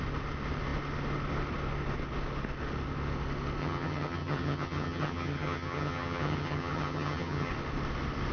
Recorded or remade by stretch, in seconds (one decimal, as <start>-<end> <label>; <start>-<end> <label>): 0.0-3.6 recorded; 3.6-7.5 remade; 7.5-8.3 recorded